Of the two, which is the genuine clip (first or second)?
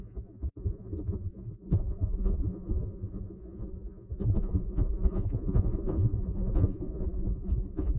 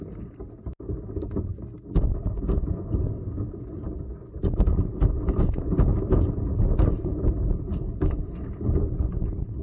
second